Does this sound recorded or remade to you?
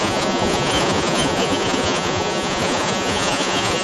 remade